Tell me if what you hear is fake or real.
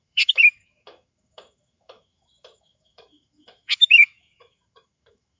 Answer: fake